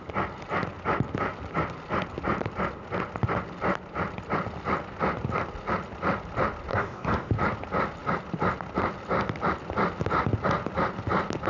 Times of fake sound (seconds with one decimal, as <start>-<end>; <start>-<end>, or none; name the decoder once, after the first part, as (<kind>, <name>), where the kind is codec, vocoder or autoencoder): 6.7-7.3 (codec, DAC)